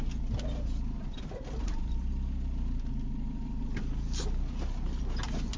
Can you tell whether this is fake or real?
real